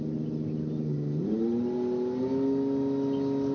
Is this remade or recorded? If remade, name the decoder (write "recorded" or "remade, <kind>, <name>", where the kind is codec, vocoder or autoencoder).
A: recorded